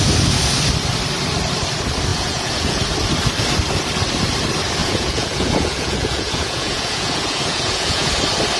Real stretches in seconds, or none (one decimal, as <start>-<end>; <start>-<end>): 0.0-2.1; 2.8-4.8; 8.1-8.6